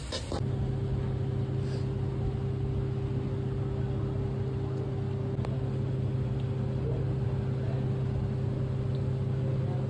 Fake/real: real